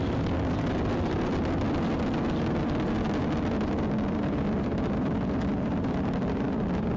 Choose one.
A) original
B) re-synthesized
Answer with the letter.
A